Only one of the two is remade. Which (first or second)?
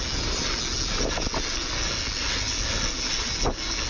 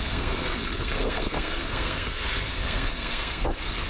second